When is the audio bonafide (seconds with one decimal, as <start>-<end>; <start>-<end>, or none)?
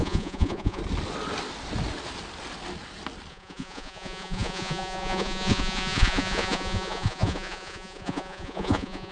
0.8-3.3